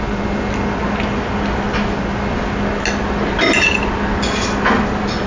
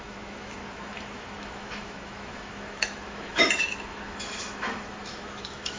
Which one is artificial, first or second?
second